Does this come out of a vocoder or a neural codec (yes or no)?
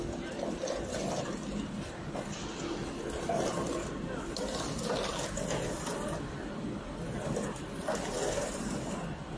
no